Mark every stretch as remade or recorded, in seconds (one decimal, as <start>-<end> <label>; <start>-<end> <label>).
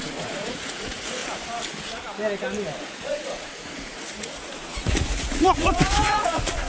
0.0-1.2 remade; 1.2-2.8 recorded; 2.8-6.7 remade